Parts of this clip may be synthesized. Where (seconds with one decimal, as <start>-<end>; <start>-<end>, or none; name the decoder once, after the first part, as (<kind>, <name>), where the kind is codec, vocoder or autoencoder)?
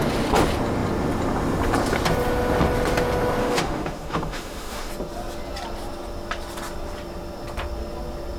3.4-4.9 (autoencoder, DAC-VAE)